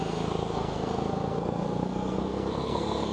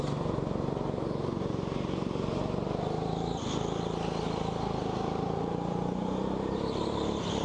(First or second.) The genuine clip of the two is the second